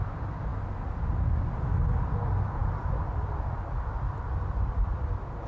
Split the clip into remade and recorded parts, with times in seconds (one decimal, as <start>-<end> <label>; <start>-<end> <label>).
0.0-5.5 recorded